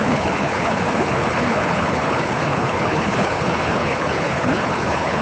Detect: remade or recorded remade